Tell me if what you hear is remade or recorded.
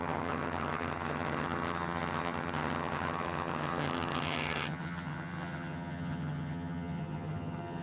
remade